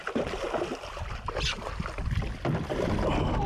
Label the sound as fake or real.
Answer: real